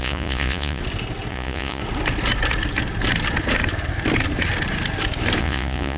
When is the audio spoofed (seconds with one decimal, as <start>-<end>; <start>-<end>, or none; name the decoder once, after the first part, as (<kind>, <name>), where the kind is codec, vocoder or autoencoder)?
0.0-0.8 (vocoder, Vocos); 1.3-1.8; 5.4-6.0

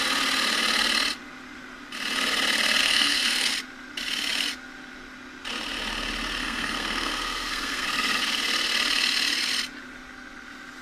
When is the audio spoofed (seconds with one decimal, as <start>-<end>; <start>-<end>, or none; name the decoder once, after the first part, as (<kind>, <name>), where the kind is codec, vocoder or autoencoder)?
2.8-3.5 (codec, SNAC); 6.4-8.2